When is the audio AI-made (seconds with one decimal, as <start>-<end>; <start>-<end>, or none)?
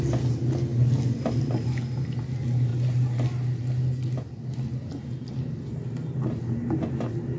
none